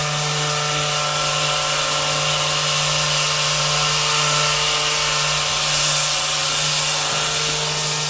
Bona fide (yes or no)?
yes